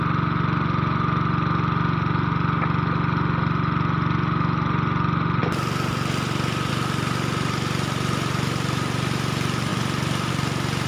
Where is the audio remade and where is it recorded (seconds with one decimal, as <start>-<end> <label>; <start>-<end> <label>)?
0.0-10.9 recorded